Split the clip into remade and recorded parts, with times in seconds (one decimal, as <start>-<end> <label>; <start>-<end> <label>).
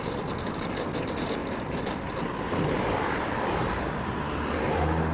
0.0-1.4 recorded; 1.4-4.5 remade; 4.5-5.1 recorded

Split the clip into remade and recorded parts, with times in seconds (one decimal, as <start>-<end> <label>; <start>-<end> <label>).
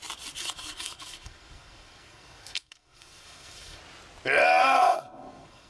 0.0-0.4 recorded; 0.4-3.8 remade; 3.8-4.6 recorded; 4.6-5.7 remade